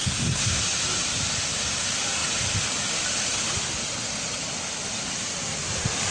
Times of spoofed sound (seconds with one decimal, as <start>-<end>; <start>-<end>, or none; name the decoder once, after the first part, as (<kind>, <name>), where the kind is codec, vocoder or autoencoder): 0.0-0.6 (codec, SNAC)